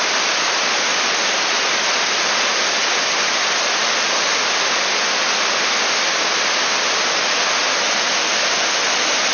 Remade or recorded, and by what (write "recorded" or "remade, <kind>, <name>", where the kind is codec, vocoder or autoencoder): recorded